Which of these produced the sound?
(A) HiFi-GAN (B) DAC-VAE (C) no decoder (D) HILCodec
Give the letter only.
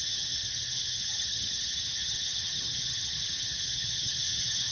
A